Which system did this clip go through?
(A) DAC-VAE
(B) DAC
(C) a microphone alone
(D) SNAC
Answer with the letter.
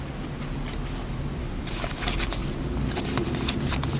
C